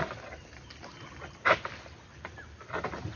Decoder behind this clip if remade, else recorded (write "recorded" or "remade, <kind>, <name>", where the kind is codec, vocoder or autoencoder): recorded